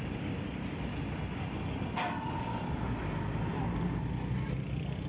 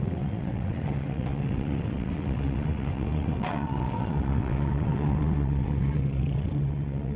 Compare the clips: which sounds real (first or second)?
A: first